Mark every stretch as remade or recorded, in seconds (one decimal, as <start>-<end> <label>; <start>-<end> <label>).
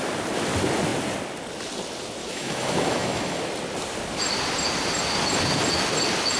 0.0-2.2 recorded; 2.2-3.4 remade; 3.4-6.4 recorded